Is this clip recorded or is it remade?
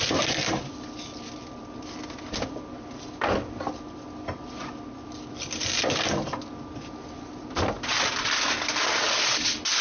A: recorded